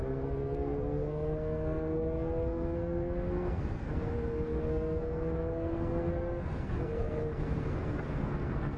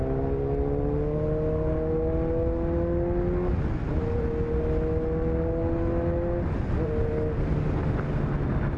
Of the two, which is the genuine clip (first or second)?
second